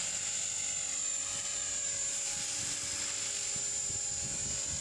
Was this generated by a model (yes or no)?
no